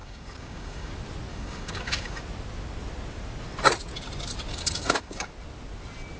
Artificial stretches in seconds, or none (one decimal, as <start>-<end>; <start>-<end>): 0.0-0.9; 1.3-2.2; 4.5-5.3

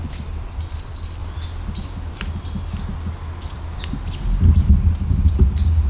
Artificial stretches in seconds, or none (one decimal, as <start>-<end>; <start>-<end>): none